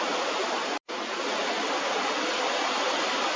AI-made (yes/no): no